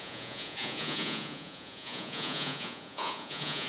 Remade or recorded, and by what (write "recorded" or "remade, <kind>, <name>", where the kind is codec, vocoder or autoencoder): remade, vocoder, Vocos